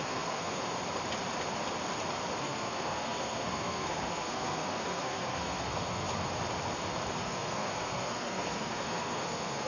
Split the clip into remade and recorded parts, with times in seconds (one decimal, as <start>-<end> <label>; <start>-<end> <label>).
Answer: 0.0-0.6 remade; 0.6-2.4 recorded; 2.4-6.1 remade; 6.1-7.2 recorded; 7.2-9.7 remade